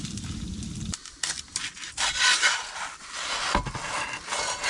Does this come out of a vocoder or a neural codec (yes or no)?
no